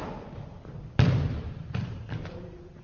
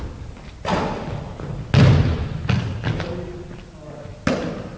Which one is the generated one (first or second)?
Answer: first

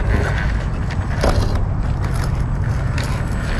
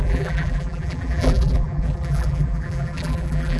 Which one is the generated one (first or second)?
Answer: second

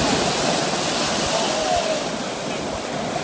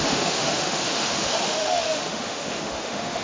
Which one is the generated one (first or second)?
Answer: second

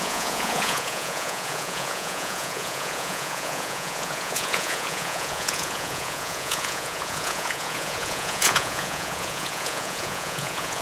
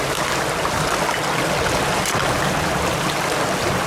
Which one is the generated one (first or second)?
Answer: first